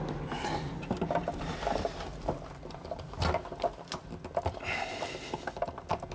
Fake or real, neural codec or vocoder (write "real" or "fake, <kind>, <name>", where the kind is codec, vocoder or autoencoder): real